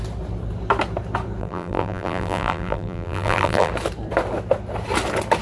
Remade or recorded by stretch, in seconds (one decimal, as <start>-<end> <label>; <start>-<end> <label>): 0.0-1.4 recorded; 1.4-3.7 remade; 3.7-5.4 recorded